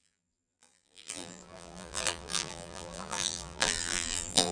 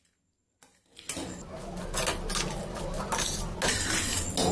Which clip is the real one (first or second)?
second